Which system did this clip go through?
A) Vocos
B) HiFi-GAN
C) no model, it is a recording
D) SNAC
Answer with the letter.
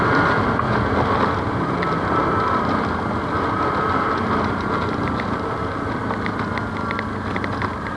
C